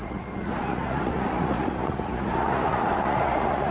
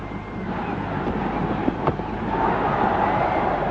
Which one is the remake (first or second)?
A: first